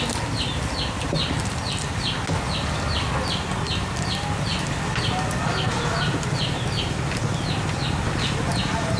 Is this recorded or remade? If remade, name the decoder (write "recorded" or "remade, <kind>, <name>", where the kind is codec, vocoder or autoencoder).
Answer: recorded